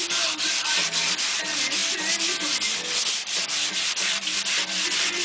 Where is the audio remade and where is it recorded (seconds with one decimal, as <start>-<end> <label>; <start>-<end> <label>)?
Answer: 0.0-1.8 remade; 1.8-3.1 recorded; 3.1-5.2 remade